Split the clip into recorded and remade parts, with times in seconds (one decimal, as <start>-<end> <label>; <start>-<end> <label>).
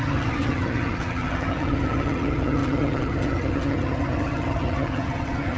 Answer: 0.0-5.6 remade